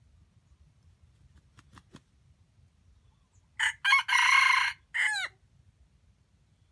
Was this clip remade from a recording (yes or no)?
no